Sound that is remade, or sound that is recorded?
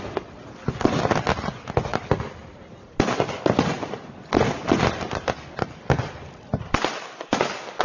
recorded